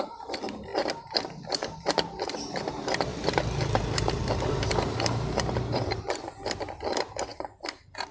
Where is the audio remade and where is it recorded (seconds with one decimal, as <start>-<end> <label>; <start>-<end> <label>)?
0.0-3.1 recorded; 3.1-6.0 remade; 6.0-7.3 recorded; 7.3-8.1 remade